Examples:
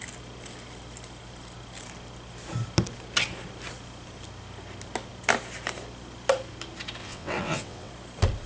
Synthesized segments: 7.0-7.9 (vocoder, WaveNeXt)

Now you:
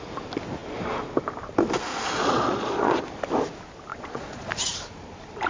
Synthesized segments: 1.9-3.0 (vocoder, Vocos); 3.9-4.5

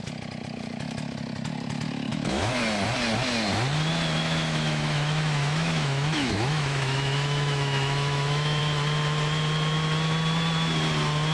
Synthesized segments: 2.1-2.6 (autoencoder, DAC-VAE); 4.2-8.6

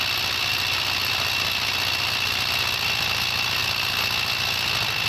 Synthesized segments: none

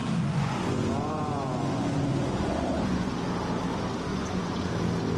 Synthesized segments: 0.0-3.1 (vocoder, Vocos); 4.1-4.7

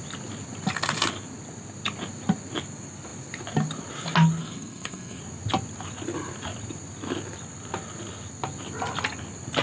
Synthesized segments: 4.4-5.2 (codec, SNAC)

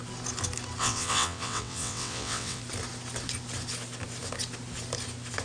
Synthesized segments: 0.8-2.6 (vocoder, WaveNeXt)